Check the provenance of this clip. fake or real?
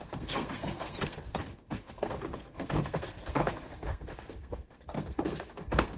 fake